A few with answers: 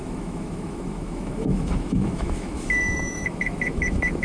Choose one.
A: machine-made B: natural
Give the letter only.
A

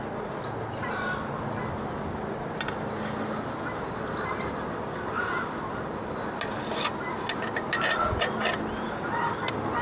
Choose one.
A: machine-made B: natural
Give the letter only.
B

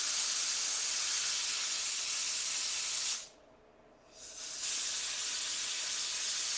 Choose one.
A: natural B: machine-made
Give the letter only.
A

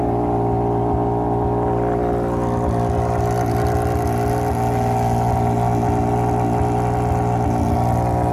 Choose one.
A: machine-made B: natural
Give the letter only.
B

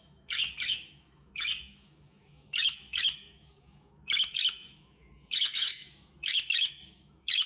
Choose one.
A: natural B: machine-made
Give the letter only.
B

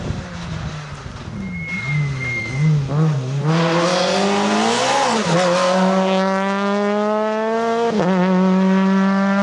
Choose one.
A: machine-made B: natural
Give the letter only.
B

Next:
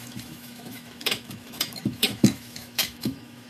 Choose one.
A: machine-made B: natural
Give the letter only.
A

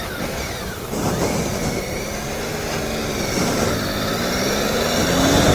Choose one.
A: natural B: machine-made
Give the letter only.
A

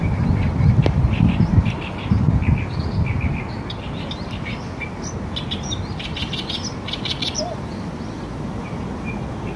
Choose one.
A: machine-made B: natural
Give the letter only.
B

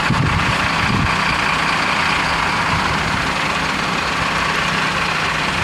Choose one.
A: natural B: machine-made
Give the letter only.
A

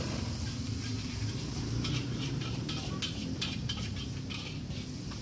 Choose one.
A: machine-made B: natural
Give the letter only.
B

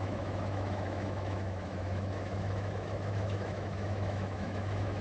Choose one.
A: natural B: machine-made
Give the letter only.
B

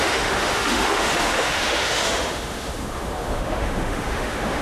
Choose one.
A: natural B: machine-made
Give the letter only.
B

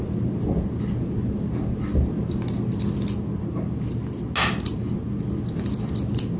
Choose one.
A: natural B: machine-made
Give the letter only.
A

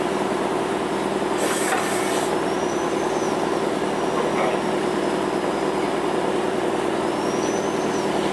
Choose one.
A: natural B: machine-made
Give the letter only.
A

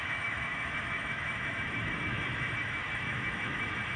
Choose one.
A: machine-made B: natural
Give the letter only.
A